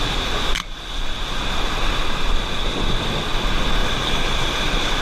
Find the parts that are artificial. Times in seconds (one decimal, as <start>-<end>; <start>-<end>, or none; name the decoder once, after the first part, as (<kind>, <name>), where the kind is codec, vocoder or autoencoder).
3.8-5.0 (vocoder, BigVGAN v2)